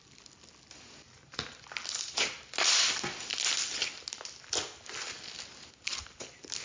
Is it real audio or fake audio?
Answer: real